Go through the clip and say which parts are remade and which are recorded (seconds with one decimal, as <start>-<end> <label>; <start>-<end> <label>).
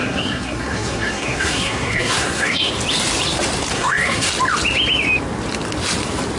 0.0-2.7 remade; 2.7-3.7 recorded; 3.7-4.3 remade; 4.3-6.4 recorded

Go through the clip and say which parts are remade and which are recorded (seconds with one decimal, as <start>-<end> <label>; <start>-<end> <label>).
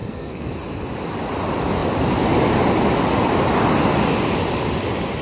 0.0-0.5 remade; 0.5-5.2 recorded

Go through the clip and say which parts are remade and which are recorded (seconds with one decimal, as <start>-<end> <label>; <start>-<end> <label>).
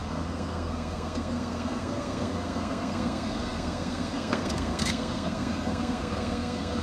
0.0-6.8 remade